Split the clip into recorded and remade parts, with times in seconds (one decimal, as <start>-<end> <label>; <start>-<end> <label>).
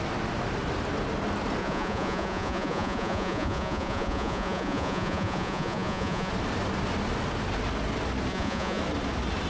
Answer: 0.0-1.6 recorded; 1.6-6.3 remade; 6.3-8.3 recorded; 8.3-8.8 remade; 8.8-9.5 recorded